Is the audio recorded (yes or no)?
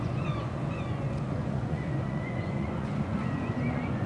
no